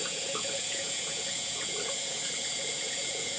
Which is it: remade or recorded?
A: remade